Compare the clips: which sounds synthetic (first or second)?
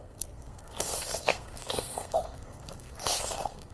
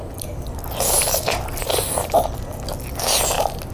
first